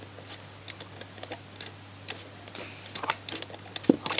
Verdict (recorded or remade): recorded